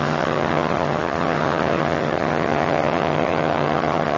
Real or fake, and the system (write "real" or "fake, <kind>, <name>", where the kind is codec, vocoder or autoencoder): fake, vocoder, HiFi-GAN